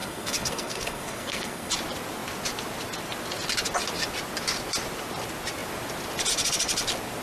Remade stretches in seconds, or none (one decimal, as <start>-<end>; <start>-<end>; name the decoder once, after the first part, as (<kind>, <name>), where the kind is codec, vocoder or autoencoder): 0.0-1.7 (codec, SNAC)